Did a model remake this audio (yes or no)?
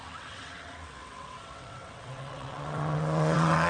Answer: yes